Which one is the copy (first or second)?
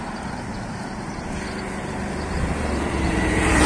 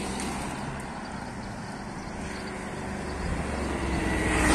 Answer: first